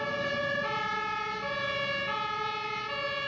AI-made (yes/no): no